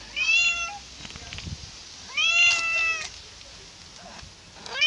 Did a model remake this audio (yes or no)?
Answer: no